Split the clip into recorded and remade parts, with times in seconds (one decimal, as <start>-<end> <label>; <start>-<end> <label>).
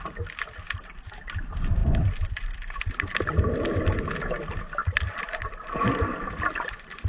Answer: 0.0-1.8 recorded; 1.8-3.0 remade; 3.0-4.8 recorded; 4.8-6.1 remade; 6.1-7.1 recorded